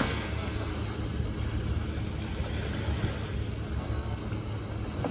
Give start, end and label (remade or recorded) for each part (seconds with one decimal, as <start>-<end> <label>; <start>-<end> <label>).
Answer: 0.0-0.7 remade; 0.7-3.8 recorded; 3.8-4.2 remade; 4.2-5.1 recorded